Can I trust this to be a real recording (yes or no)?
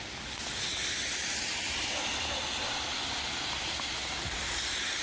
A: yes